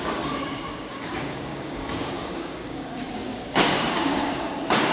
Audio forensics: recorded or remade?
remade